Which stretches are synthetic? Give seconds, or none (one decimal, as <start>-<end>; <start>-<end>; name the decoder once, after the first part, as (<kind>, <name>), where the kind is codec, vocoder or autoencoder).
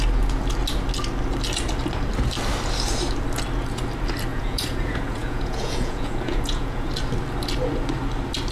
4.3-6.9 (vocoder, Vocos)